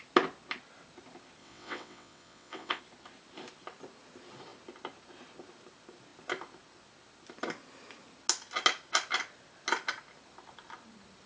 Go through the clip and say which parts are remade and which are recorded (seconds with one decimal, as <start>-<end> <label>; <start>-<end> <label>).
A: 0.0-1.4 recorded; 1.4-2.8 remade; 2.8-11.3 recorded